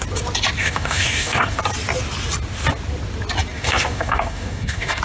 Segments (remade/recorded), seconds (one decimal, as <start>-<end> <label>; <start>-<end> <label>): 0.0-0.6 recorded; 0.6-1.6 remade; 1.6-3.5 recorded; 3.5-5.0 remade